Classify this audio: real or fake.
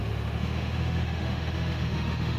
fake